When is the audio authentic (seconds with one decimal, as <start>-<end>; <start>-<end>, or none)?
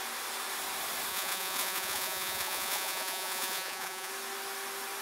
0.0-1.1; 4.1-5.0